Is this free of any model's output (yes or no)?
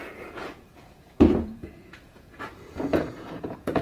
no